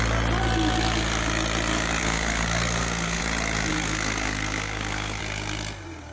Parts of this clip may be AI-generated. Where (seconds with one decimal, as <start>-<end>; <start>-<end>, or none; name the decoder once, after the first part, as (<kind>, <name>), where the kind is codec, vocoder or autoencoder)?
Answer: 2.0-3.2 (codec, SNAC); 3.7-5.2